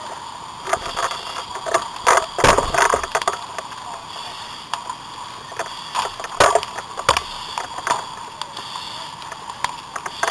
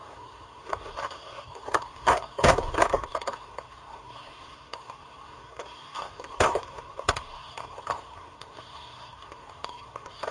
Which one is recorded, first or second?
first